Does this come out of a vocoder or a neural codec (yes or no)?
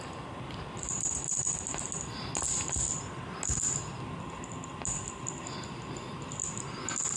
no